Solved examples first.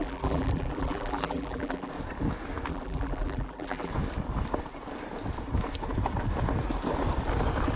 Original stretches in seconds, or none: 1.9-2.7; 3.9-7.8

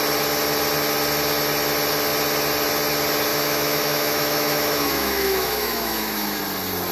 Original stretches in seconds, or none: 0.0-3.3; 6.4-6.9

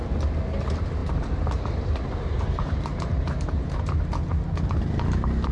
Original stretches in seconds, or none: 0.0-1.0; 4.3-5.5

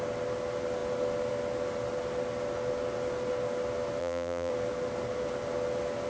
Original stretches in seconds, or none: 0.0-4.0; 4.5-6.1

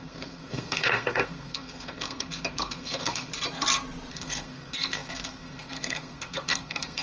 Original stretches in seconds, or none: 3.3-4.1

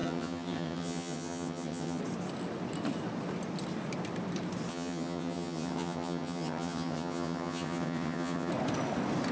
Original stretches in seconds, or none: 2.0-4.7; 8.5-9.3

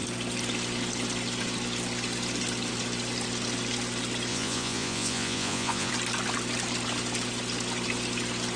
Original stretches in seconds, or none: 0.0-4.3; 5.9-8.6

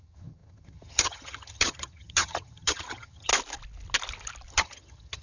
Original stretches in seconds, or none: 3.3-4.5